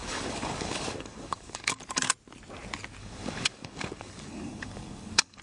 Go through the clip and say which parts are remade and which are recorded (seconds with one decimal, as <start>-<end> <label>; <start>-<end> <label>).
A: 0.0-1.8 remade; 1.8-3.0 recorded; 3.0-5.4 remade